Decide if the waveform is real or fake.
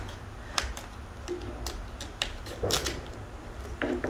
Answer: real